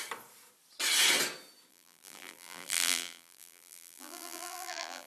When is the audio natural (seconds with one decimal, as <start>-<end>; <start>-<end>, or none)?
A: 0.0-1.7